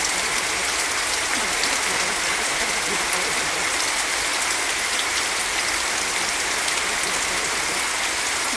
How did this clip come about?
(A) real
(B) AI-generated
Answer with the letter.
A